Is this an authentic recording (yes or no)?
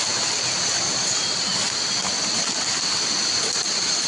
yes